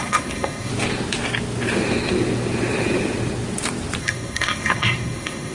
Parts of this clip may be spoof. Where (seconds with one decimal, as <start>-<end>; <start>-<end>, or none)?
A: 0.0-0.7; 4.0-5.5